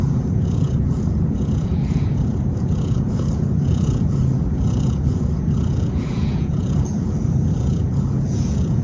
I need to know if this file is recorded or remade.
remade